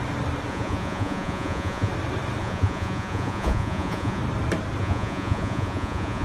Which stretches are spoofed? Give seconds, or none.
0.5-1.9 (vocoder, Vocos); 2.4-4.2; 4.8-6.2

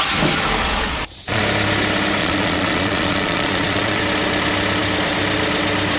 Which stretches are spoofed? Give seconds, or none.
0.6-1.4 (vocoder, Vocos); 2.2-4.0